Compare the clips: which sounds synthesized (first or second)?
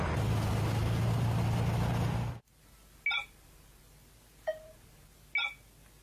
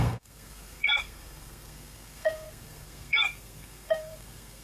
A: second